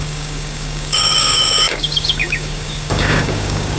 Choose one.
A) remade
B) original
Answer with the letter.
A